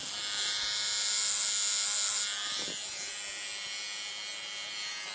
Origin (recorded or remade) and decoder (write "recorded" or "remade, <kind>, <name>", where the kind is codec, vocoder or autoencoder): recorded